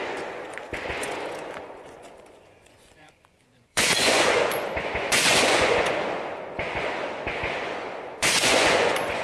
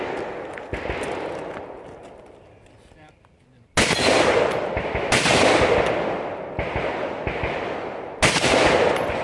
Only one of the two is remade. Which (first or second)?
first